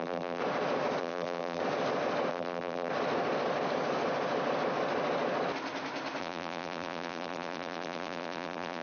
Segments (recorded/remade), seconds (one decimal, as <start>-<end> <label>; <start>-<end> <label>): 0.0-0.4 remade; 0.4-1.0 recorded; 1.0-1.6 remade; 1.6-2.3 recorded; 2.3-2.9 remade; 2.9-6.2 recorded; 6.2-8.8 remade